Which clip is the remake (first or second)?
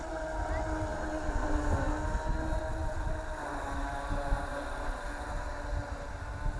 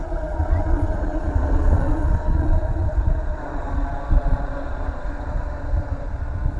second